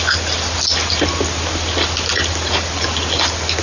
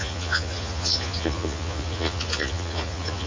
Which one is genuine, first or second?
first